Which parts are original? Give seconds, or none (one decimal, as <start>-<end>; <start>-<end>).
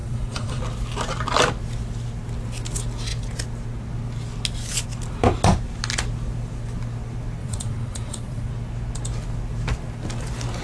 0.6-7.4; 8.5-10.6